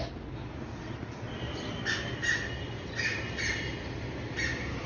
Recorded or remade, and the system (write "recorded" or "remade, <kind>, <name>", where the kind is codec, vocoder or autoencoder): recorded